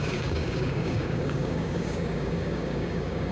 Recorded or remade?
remade